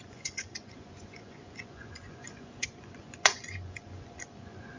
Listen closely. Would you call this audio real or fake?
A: fake